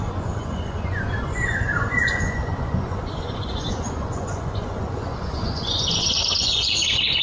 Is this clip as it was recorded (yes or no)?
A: no